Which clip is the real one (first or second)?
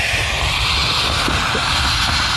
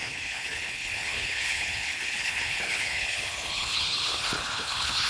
first